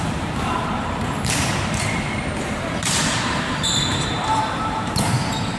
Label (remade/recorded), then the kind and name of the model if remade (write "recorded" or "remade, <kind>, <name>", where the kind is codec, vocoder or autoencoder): remade, vocoder, BigVGAN v2